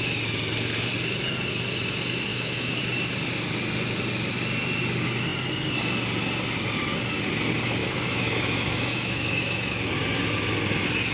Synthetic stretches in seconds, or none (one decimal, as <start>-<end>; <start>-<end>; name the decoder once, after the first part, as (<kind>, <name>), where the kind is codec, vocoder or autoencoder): 2.3-2.8 (autoencoder, DAC-VAE); 7.8-9.9